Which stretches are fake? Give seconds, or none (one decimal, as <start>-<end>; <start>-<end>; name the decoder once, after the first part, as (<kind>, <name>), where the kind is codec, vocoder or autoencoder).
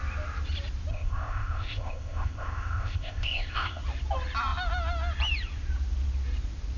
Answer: 0.9-3.8 (codec, ZipCodec)